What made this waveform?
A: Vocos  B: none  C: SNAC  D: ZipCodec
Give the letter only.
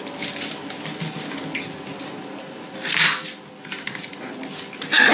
B